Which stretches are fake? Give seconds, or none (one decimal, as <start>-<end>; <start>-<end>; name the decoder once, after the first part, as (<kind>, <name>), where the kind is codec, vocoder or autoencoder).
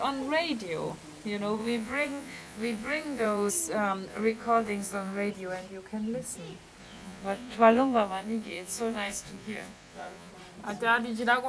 1.6-3.5 (vocoder, Vocos); 4.1-5.3; 6.8-10.3